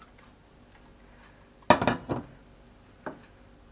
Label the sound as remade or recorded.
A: recorded